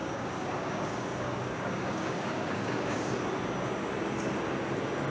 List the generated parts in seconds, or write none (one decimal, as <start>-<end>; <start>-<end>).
0.0-3.1